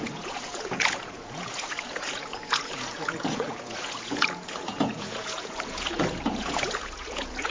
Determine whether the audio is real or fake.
fake